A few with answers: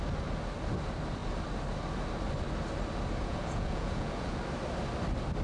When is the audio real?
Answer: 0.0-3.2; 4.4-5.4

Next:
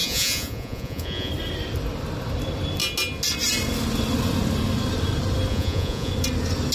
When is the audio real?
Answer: 1.3-5.5; 6.1-6.7

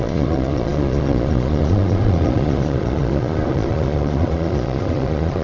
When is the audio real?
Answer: none

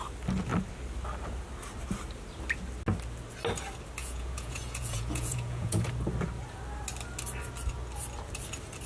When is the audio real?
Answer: 0.0-4.0; 5.9-8.9

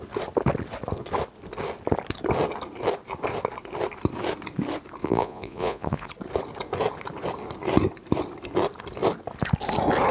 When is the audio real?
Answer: 0.0-5.0; 6.1-10.1

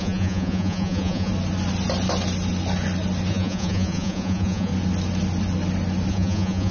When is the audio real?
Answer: 1.3-3.3; 4.7-6.1